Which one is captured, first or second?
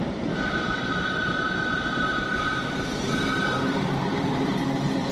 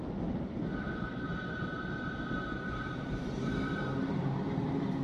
second